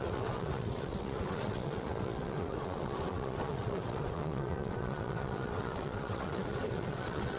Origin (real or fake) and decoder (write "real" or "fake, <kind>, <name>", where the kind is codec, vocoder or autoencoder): fake, vocoder, WaveNeXt